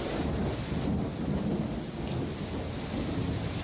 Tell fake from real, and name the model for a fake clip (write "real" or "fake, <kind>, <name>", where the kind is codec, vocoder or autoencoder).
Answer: real